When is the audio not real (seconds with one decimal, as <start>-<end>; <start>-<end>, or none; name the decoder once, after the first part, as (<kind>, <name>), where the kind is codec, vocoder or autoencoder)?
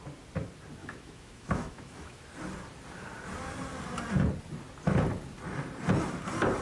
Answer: 0.8-2.2 (autoencoder, DAC-VAE)